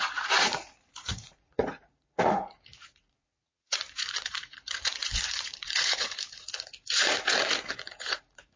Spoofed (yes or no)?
yes